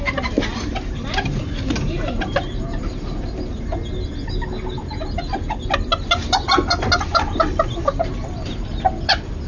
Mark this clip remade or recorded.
recorded